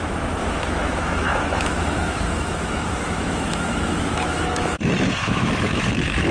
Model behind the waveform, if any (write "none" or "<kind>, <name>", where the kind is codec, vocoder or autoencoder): autoencoder, DAC-VAE